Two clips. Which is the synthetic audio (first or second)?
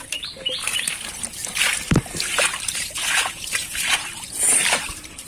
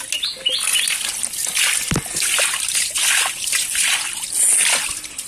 first